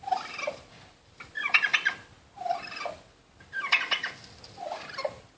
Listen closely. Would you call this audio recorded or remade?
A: recorded